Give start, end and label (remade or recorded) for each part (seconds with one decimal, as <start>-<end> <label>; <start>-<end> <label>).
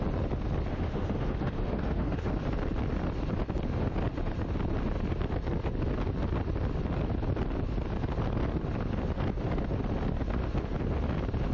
0.0-0.7 recorded; 0.7-2.3 remade; 2.3-11.5 recorded